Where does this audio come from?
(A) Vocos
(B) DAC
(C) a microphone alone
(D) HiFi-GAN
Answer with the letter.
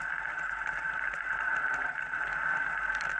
C